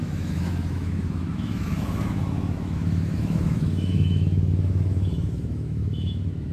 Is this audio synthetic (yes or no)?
yes